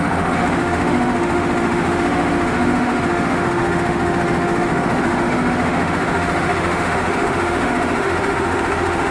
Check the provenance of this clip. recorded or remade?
remade